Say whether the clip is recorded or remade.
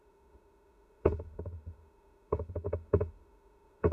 remade